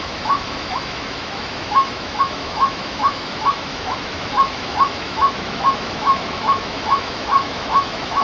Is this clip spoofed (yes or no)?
yes